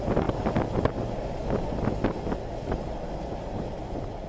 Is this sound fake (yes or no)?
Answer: no